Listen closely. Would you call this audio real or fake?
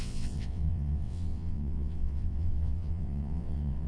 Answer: fake